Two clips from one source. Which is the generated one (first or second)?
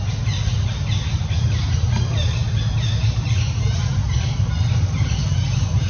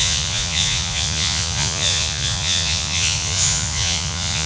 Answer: second